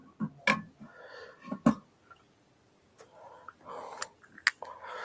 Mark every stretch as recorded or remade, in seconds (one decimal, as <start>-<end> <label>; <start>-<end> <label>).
0.0-5.0 recorded